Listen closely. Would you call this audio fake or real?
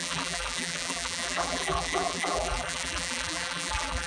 fake